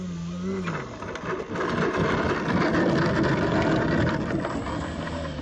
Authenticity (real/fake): real